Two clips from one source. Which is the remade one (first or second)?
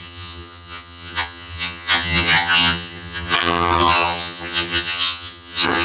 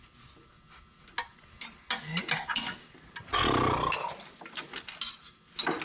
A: first